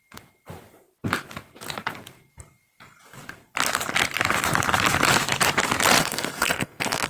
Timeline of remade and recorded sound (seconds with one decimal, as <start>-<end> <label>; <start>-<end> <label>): 0.0-6.0 recorded; 6.0-7.1 remade